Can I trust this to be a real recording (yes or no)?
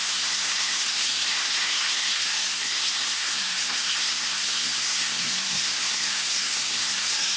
no